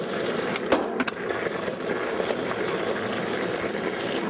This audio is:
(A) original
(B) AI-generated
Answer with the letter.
A